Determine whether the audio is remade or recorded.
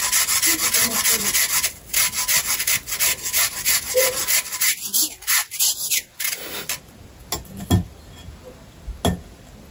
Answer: recorded